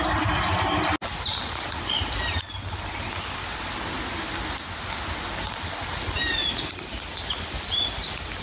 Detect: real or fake real